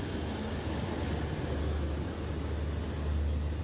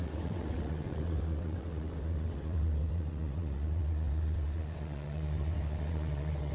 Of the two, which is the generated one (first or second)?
second